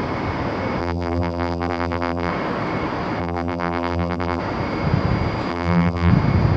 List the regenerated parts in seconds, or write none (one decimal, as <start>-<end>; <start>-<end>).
0.8-2.3; 3.2-4.4; 5.5-6.1